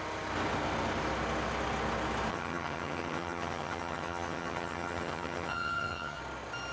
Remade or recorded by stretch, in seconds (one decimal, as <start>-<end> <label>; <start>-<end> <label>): 0.0-2.3 recorded; 2.3-6.2 remade; 6.2-6.7 recorded